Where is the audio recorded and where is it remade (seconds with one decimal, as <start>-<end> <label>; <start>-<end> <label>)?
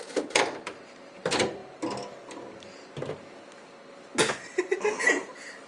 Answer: 0.0-1.6 remade; 1.6-5.0 recorded; 5.0-5.7 remade